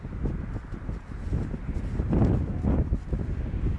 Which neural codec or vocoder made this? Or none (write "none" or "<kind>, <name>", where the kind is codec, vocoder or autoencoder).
none